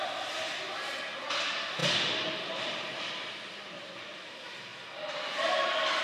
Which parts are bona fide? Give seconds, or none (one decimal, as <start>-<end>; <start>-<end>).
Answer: 0.0-6.0